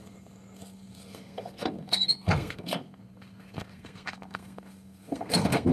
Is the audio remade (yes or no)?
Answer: yes